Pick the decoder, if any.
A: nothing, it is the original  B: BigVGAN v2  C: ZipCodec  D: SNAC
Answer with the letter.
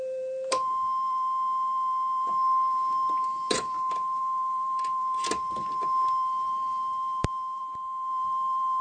B